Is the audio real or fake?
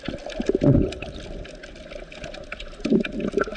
real